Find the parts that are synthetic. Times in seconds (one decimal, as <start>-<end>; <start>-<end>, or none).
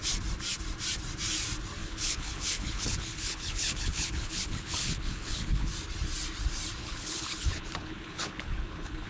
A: 1.8-5.7; 6.8-9.1